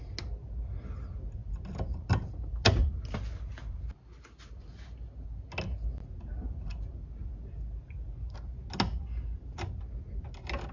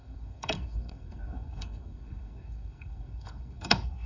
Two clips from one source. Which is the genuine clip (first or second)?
first